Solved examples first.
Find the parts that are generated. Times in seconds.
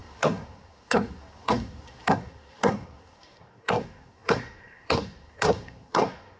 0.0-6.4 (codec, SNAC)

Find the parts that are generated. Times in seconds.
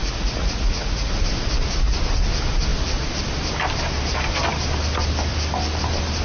0.0-1.1 (vocoder, Vocos)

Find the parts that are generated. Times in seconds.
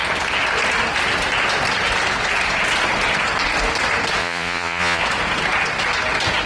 4.2-5.0 (vocoder, Vocos)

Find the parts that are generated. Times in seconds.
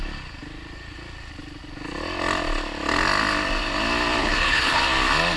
4.2-4.8 (codec, HILCodec)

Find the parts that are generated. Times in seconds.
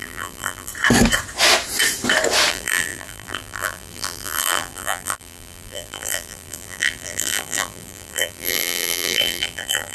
0.0-0.7 (vocoder, BigVGAN v2); 2.5-9.9